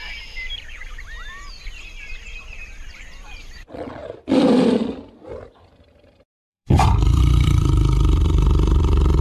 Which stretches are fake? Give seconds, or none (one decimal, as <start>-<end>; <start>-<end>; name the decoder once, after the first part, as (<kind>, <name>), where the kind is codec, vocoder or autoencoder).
0.0-9.2 (vocoder, BigVGAN v2)